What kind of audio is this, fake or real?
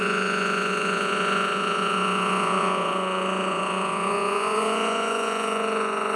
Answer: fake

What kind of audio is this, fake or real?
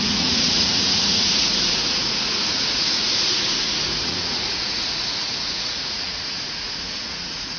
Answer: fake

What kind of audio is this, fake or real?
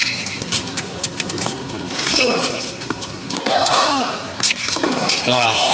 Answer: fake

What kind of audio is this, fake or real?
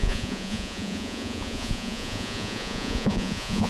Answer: fake